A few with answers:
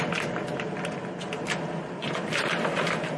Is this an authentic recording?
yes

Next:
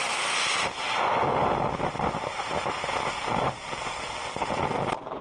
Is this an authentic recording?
yes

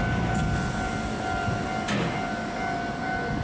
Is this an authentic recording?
yes